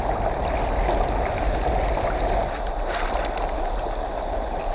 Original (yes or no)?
yes